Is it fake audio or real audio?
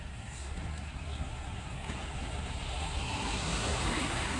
fake